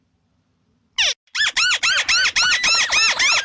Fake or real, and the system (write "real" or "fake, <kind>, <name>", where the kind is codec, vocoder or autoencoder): real